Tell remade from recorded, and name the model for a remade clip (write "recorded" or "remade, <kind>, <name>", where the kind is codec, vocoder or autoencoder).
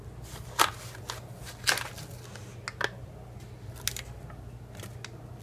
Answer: recorded